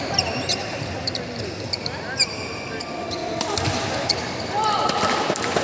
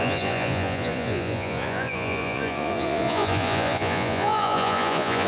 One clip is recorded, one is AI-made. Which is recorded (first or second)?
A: first